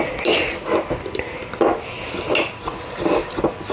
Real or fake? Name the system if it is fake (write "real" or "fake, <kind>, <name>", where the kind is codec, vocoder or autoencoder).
real